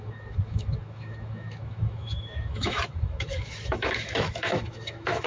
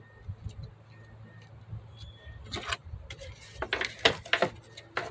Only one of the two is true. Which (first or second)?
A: second